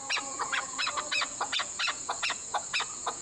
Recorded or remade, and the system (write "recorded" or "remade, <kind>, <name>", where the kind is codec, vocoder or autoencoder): remade, vocoder, Vocos